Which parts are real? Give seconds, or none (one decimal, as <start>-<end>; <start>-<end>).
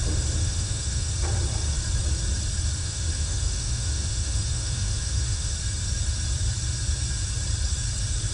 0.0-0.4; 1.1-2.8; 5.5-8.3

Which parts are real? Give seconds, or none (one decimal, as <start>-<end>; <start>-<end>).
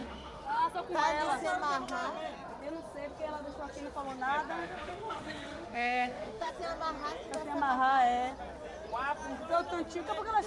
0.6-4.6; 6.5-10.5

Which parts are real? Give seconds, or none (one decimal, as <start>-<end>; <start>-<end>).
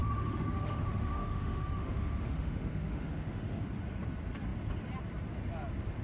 3.6-6.0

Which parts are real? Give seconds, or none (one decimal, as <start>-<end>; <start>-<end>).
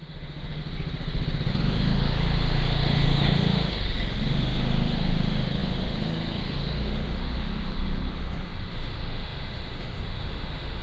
0.6-1.5